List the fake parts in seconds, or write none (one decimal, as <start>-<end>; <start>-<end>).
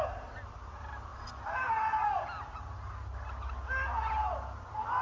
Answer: 0.0-1.1; 4.1-5.0